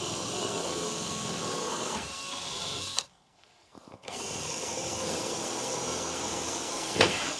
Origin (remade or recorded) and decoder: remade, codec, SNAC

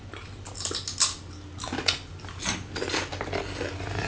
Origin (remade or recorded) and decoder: recorded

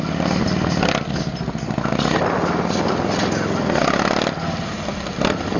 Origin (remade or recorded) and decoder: recorded